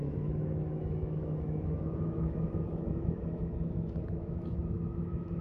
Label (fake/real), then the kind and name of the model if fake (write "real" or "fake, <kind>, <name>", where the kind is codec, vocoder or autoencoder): fake, autoencoder, DAC-VAE